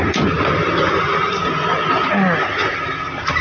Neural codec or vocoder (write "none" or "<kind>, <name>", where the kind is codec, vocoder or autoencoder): none